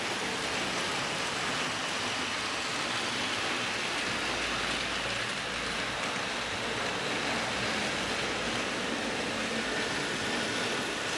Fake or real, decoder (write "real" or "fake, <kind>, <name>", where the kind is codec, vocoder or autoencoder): real